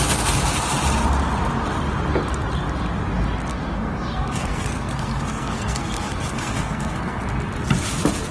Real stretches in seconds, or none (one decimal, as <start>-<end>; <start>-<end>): 0.0-3.5; 7.2-8.3